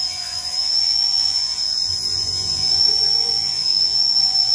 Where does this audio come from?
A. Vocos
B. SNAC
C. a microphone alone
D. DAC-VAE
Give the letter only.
A